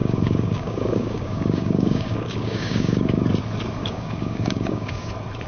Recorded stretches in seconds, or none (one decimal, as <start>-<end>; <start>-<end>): 3.3-3.8; 5.1-5.5